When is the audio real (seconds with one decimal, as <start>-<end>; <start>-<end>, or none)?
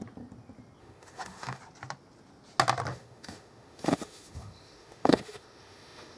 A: 0.0-0.8; 1.6-2.9